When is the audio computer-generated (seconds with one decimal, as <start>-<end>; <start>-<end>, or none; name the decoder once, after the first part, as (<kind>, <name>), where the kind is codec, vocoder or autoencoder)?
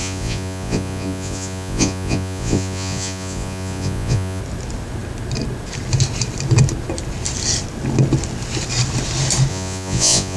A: 0.0-4.4 (vocoder, Vocos); 9.5-10.4